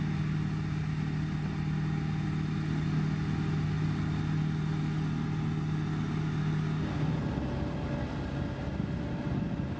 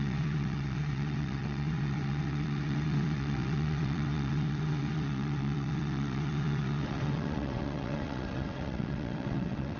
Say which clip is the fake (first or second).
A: second